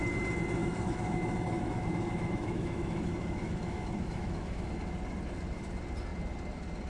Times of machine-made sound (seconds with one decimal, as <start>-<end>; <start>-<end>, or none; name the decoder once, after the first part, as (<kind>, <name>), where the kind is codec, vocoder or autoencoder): 0.6-4.7 (autoencoder, DAC-VAE)